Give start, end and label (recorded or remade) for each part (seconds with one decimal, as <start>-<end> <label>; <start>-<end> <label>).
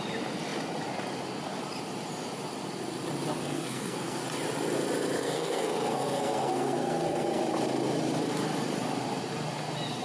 0.0-3.3 recorded; 3.3-4.2 remade; 4.2-5.2 recorded; 5.2-7.4 remade; 7.4-10.0 recorded